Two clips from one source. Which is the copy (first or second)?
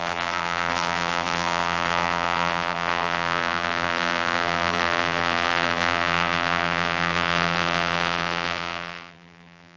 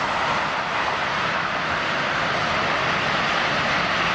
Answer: first